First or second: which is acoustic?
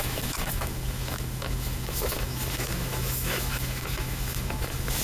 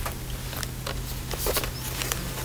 second